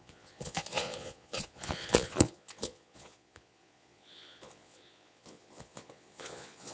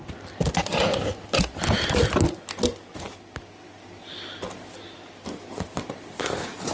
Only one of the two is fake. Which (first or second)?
first